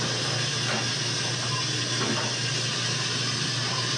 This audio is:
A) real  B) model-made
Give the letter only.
A